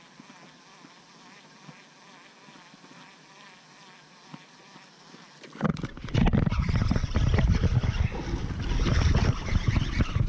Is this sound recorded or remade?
recorded